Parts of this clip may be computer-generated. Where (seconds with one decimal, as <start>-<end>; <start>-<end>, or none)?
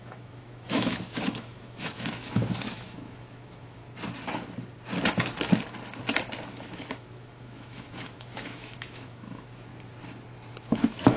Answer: 0.0-3.8; 6.5-9.7; 10.5-11.2